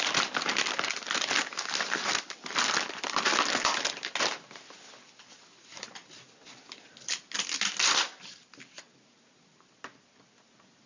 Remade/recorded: recorded